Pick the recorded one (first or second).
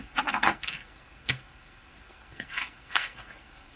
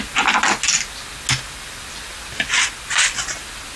second